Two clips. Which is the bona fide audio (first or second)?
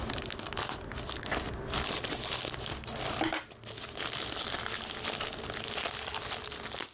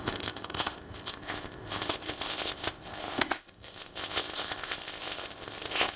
first